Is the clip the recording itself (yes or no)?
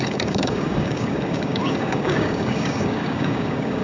no